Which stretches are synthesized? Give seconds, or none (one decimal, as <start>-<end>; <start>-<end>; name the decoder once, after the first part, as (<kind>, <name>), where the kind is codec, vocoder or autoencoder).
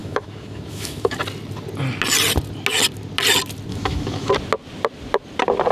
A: 0.0-1.2 (autoencoder, DAC-VAE); 3.7-4.3